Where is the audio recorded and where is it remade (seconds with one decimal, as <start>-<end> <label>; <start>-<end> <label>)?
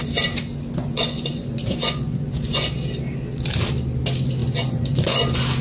0.0-0.8 recorded; 0.8-2.7 remade; 2.7-4.4 recorded; 4.4-5.1 remade; 5.1-5.6 recorded